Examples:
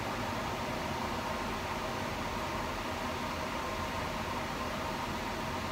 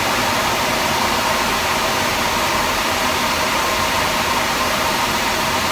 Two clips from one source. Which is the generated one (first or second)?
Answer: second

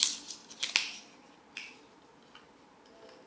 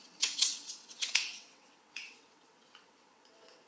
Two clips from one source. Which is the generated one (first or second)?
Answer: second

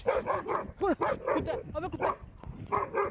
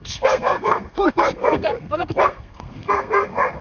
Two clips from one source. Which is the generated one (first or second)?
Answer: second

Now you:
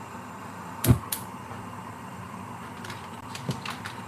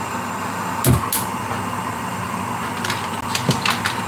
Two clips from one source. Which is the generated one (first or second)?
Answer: first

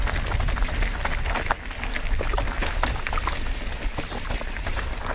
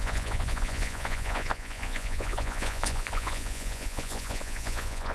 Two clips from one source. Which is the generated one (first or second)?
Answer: second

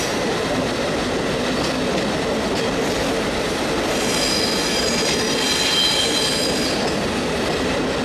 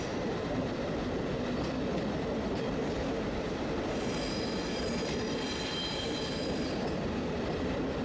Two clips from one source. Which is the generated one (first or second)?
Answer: second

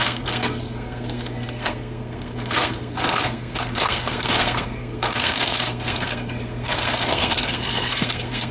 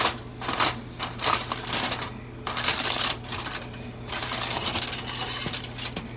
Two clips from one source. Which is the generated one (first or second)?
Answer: first